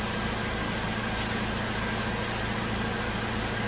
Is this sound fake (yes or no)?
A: no